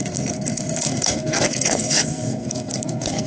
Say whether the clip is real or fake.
fake